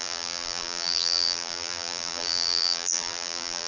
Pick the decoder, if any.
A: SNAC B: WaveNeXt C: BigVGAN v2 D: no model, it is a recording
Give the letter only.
C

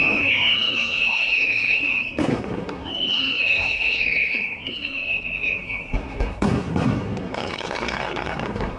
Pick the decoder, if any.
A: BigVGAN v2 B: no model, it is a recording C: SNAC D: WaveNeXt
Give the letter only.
C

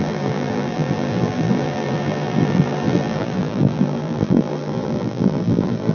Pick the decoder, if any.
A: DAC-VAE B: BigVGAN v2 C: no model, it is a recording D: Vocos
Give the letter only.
B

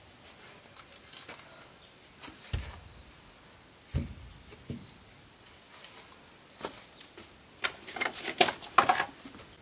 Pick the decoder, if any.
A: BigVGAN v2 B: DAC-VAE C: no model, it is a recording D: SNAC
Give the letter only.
C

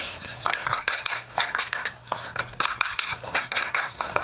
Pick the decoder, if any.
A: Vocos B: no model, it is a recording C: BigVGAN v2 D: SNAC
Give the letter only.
D